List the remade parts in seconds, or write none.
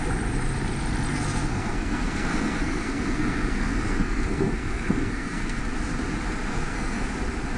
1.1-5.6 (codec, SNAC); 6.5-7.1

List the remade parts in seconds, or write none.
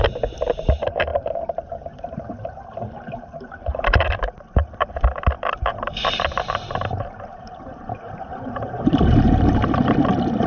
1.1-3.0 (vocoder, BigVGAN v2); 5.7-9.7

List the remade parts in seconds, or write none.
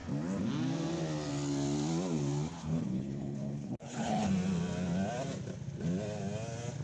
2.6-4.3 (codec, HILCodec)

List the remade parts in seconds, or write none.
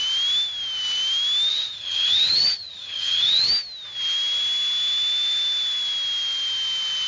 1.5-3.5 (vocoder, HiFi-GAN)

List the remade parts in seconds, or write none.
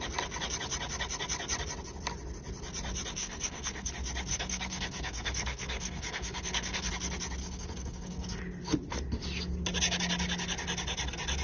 3.2-3.9 (codec, SNAC); 4.3-6.9; 7.4-8.4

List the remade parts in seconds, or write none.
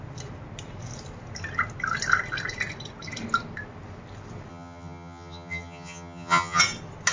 4.5-6.6 (vocoder, HiFi-GAN)